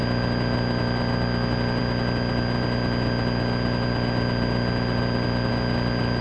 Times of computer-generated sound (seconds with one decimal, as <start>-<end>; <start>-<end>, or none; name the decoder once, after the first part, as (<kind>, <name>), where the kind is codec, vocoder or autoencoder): none